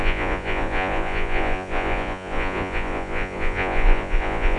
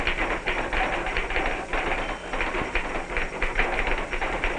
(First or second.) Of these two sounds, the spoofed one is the first